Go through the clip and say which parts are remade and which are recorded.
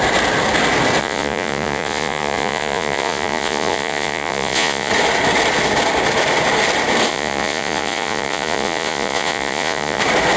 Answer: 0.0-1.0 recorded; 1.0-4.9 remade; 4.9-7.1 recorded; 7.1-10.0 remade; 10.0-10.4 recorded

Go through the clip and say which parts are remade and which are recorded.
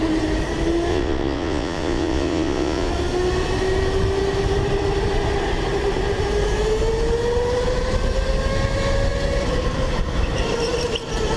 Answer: 0.0-0.9 recorded; 0.9-2.9 remade; 2.9-11.4 recorded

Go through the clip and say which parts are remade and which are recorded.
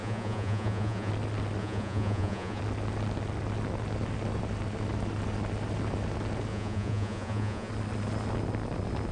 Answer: 0.0-1.1 remade; 1.1-1.6 recorded; 1.6-2.6 remade; 2.6-6.5 recorded; 6.5-7.7 remade; 7.7-9.1 recorded